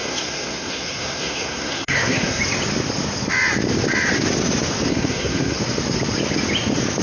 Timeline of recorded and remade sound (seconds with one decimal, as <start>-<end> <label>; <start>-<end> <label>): 0.0-2.4 remade; 2.4-4.9 recorded; 4.9-5.6 remade; 5.6-7.0 recorded